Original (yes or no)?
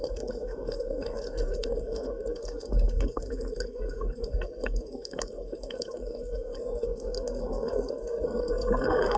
no